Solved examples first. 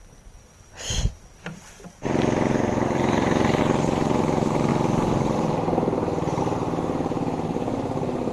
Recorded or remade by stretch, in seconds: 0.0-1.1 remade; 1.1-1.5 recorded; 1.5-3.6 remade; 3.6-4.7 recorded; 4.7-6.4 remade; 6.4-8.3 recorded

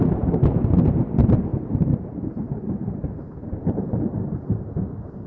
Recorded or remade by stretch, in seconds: 0.0-5.3 remade

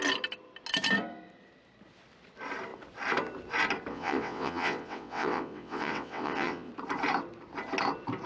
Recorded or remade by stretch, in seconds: 0.0-3.9 recorded; 3.9-6.7 remade; 6.7-8.3 recorded

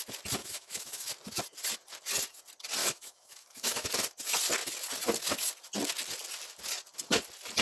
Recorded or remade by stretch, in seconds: 0.0-0.4 recorded; 0.4-1.1 remade; 1.1-2.8 recorded; 2.8-3.9 remade; 3.9-7.6 recorded

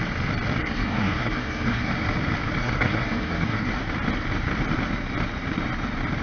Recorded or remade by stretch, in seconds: 0.0-0.6 recorded; 0.6-1.9 remade; 1.9-2.6 recorded; 2.6-3.7 remade; 3.7-6.2 recorded

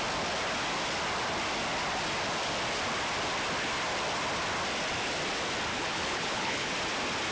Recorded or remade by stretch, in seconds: 0.0-5.7 recorded; 5.7-6.7 remade; 6.7-7.3 recorded